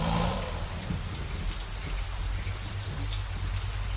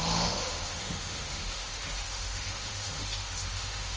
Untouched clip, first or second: first